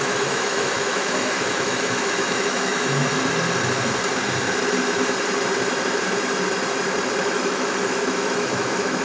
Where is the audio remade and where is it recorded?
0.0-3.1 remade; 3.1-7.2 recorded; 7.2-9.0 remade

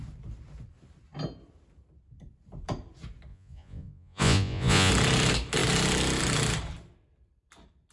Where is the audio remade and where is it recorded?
0.0-3.3 recorded; 3.3-4.9 remade; 4.9-7.9 recorded

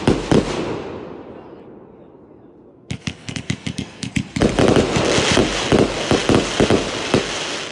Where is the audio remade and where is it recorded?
0.0-2.7 recorded; 2.7-4.1 remade; 4.1-7.7 recorded

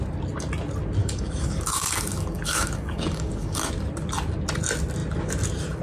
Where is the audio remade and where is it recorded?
0.0-1.0 recorded; 1.0-3.7 remade; 3.7-5.8 recorded

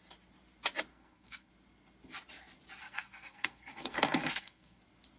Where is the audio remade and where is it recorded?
0.0-0.9 recorded; 0.9-1.5 remade; 1.5-2.8 recorded; 2.8-4.8 remade; 4.8-5.2 recorded

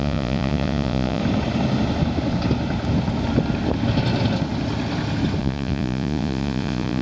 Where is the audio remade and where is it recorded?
0.0-1.2 remade; 1.2-5.4 recorded; 5.4-7.0 remade